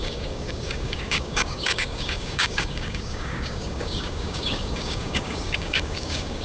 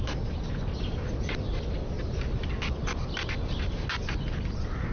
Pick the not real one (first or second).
first